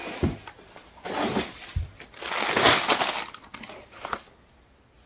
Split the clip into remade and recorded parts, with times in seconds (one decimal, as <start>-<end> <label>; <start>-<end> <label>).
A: 0.0-5.1 recorded